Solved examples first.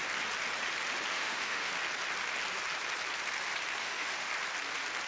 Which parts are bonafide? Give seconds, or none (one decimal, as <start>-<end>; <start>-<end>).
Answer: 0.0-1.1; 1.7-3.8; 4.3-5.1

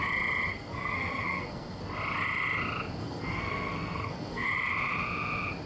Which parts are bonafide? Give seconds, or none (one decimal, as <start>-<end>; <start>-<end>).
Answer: 0.0-0.5; 1.8-3.0; 4.5-5.7

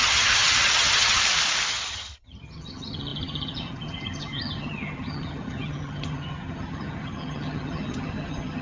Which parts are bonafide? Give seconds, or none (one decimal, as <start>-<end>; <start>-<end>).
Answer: 1.2-1.7